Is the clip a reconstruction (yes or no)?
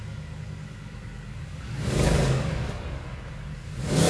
yes